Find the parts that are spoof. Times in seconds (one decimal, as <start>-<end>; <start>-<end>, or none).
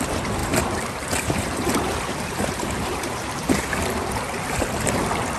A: 0.4-3.6